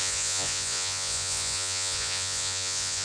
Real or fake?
fake